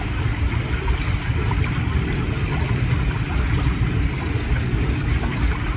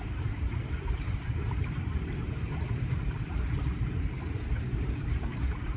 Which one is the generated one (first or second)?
second